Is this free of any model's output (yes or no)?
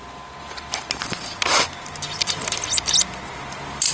yes